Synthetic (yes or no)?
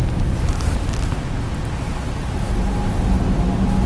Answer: no